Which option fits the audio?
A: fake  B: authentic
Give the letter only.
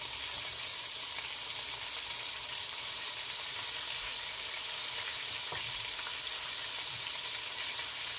B